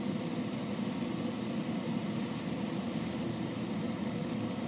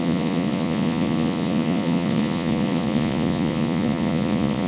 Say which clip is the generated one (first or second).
second